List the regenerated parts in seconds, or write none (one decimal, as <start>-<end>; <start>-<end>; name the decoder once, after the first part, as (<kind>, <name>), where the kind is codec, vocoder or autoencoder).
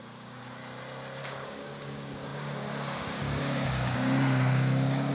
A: 0.0-0.6 (codec, DAC); 1.2-5.1